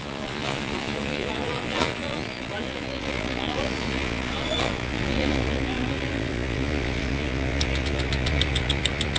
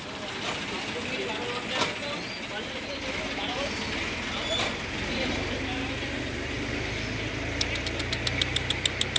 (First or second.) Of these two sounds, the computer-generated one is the first